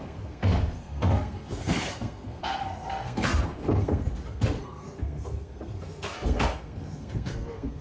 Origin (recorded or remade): remade